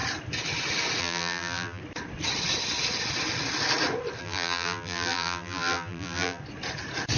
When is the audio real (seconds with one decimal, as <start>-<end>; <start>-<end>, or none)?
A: 0.0-1.0; 1.8-4.2; 6.4-7.2

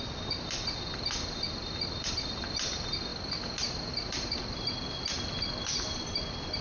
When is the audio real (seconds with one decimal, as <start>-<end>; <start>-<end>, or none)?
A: 3.1-3.9

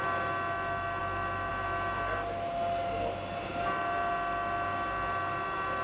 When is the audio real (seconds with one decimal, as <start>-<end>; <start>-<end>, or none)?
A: 0.0-5.8